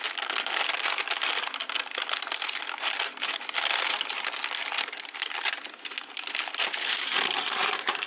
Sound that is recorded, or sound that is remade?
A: recorded